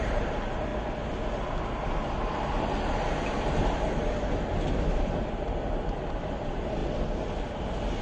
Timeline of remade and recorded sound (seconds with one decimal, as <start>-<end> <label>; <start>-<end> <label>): 0.0-0.7 remade; 0.7-5.3 recorded; 5.3-6.8 remade; 6.8-7.6 recorded; 7.6-8.0 remade